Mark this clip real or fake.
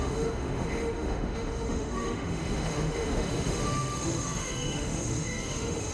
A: fake